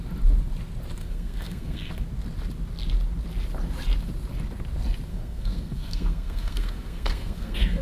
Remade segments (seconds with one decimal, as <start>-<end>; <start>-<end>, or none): 1.0-1.9; 5.1-7.8